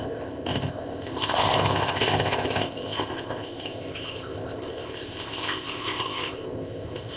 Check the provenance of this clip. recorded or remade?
remade